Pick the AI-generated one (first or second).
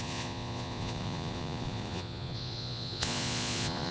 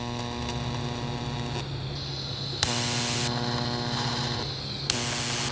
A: first